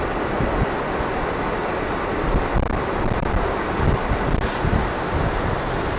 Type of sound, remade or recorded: recorded